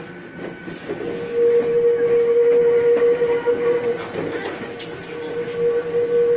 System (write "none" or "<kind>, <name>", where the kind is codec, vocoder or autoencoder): none